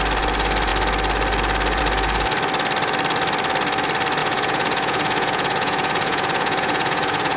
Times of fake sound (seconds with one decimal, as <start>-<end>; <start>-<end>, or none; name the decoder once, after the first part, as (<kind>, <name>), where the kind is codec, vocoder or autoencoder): 4.2-7.4 (vocoder, Vocos)